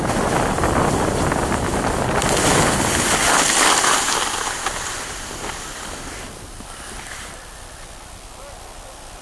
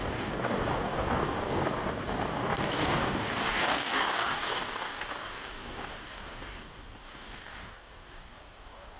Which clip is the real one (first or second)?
first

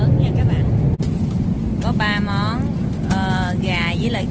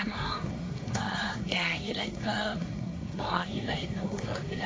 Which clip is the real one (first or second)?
first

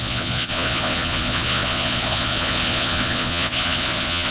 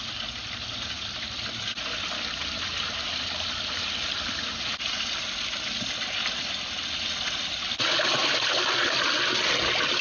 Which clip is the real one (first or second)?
second